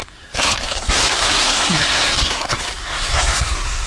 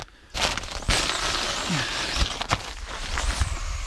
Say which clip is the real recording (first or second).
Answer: second